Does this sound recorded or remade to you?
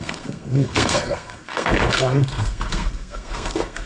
remade